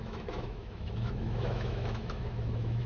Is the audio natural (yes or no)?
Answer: no